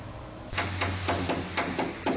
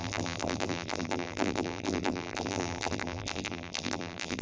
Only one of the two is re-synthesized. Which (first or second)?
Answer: second